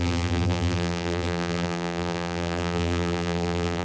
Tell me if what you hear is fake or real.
fake